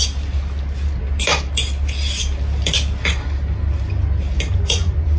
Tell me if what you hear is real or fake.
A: real